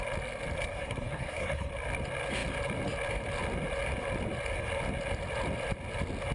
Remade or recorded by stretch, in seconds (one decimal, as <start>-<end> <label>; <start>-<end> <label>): 0.0-0.7 recorded; 0.7-1.7 remade; 1.7-6.3 recorded